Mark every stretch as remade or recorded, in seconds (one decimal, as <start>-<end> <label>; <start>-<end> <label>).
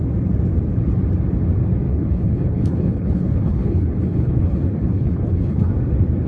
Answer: 0.0-1.9 recorded; 1.9-5.7 remade; 5.7-6.3 recorded